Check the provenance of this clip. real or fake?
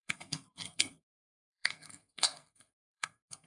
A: fake